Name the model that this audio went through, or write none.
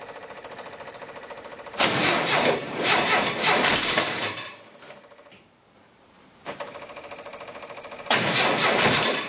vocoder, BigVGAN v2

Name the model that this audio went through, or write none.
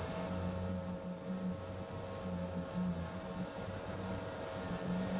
none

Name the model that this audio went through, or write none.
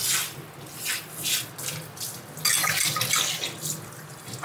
none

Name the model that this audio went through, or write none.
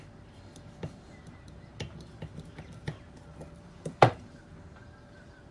vocoder, BigVGAN v2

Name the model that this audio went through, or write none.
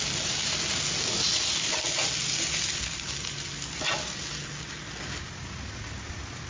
none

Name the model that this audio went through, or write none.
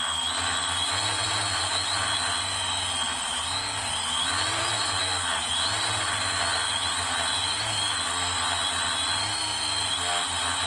none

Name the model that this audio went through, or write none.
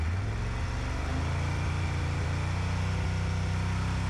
none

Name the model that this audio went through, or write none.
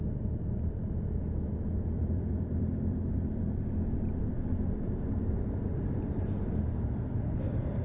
vocoder, BigVGAN v2